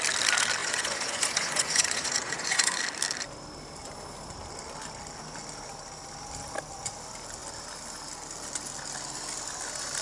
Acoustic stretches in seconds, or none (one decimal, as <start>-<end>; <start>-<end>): 0.0-0.6; 2.8-10.0